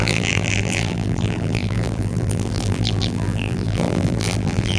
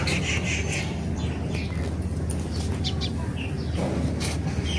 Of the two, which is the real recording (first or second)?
second